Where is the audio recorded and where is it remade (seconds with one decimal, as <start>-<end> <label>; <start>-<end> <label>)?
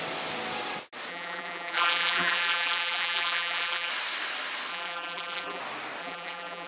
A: 0.0-1.1 recorded; 1.1-3.9 remade; 3.9-4.7 recorded; 4.7-5.6 remade; 5.6-6.0 recorded; 6.0-6.7 remade